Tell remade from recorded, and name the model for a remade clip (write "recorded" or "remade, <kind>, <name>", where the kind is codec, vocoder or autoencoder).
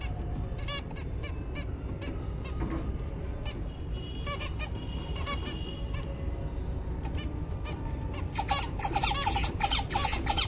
recorded